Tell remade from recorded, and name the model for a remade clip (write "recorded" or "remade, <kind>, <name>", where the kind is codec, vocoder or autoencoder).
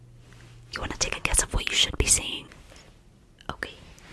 recorded